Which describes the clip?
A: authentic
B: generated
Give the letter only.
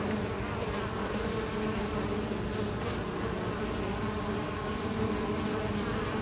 A